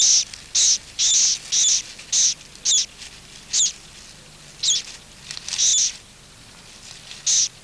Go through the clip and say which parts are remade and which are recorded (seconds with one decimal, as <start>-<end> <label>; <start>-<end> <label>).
0.0-7.6 recorded